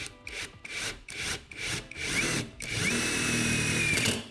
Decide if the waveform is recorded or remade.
remade